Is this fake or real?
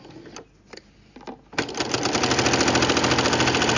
real